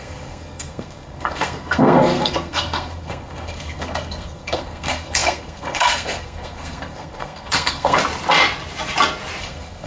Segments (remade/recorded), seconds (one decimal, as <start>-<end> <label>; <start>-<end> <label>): 0.0-8.0 remade; 8.0-9.4 recorded; 9.4-9.9 remade